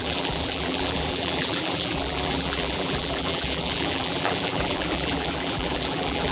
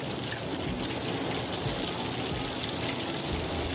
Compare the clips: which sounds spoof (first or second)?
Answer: first